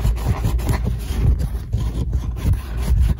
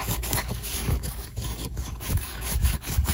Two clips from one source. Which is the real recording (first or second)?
first